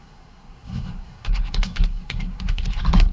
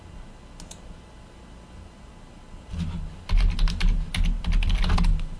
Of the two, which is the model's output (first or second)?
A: first